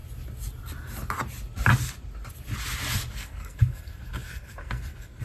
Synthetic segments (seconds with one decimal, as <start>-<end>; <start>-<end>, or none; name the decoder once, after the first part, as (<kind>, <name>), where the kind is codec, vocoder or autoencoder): 3.1-5.2 (codec, SNAC)